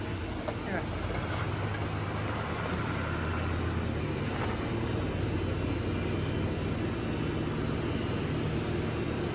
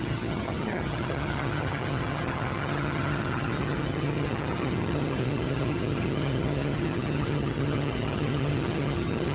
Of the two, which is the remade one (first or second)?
second